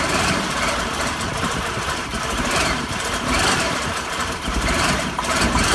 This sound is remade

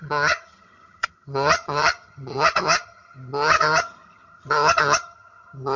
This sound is remade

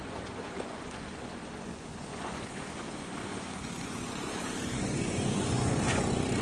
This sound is remade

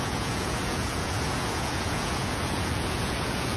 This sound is remade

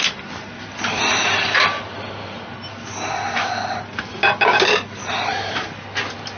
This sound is recorded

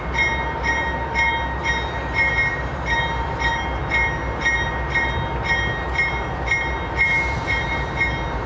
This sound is recorded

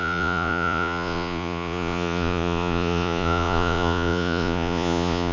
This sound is remade